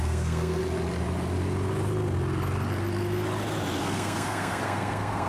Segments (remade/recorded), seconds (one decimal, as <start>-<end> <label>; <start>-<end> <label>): 0.0-0.6 remade; 0.6-3.8 recorded; 3.8-5.3 remade